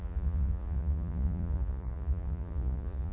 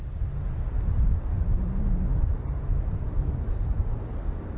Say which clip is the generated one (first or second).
first